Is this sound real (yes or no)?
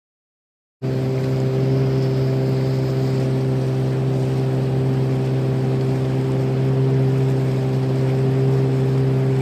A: yes